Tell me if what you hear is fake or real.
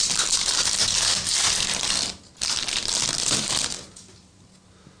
real